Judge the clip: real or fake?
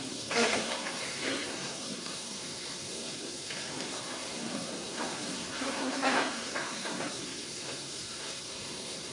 fake